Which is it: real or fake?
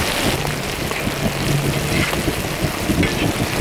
real